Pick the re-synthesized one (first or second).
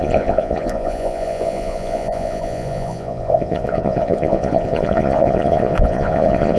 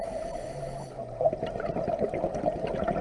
first